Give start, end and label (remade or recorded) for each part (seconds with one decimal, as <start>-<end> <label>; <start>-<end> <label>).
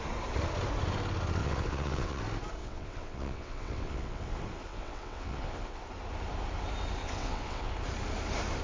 0.0-1.4 recorded; 1.4-2.2 remade; 2.2-2.6 recorded; 2.6-4.3 remade; 4.3-4.7 recorded; 4.7-5.8 remade; 5.8-7.0 recorded; 7.0-7.7 remade; 7.7-8.6 recorded